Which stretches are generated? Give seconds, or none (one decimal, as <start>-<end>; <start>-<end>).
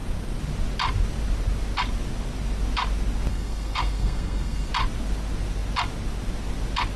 3.3-4.7